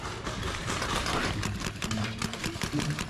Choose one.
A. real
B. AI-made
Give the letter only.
B